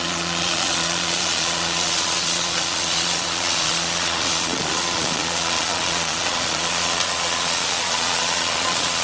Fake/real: fake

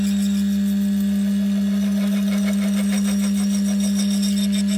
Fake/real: real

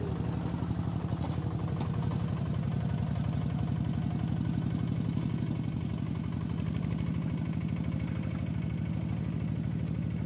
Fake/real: real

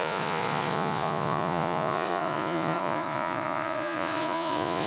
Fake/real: fake